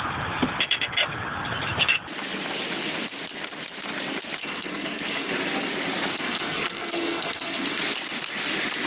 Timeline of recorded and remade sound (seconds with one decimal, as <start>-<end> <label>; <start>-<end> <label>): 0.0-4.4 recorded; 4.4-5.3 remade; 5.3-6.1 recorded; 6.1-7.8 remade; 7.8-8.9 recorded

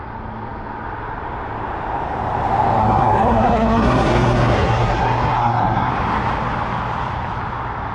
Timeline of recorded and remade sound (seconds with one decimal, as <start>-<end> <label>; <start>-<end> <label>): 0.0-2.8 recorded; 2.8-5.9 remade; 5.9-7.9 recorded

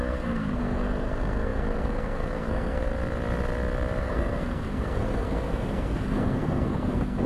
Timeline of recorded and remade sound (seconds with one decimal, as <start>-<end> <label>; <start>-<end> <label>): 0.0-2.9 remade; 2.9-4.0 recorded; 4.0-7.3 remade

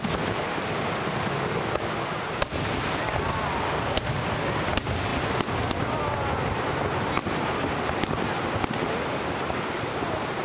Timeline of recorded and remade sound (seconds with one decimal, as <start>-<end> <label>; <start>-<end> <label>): 0.0-10.4 recorded

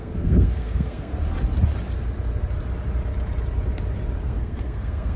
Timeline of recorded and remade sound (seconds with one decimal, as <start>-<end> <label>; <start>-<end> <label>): 0.0-1.1 remade; 1.1-4.2 recorded; 4.2-5.2 remade

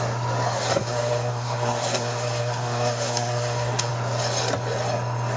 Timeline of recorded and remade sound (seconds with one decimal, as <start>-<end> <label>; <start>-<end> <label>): 0.0-0.7 recorded; 0.7-3.9 remade; 3.9-5.4 recorded

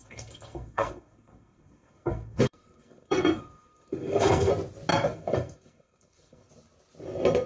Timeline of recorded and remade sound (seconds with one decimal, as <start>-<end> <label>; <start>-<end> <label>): 0.0-4.5 remade; 4.5-4.9 recorded; 4.9-6.5 remade; 6.5-7.5 recorded